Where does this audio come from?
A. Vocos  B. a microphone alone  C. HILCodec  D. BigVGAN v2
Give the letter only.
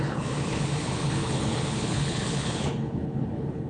C